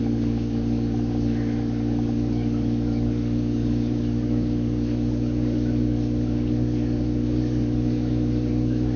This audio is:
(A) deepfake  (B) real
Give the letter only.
A